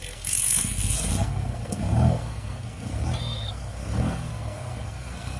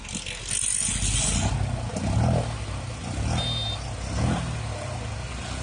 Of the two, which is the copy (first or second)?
first